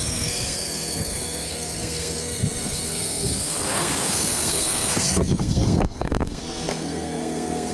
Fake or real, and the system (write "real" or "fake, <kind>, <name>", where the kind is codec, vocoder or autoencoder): fake, codec, SNAC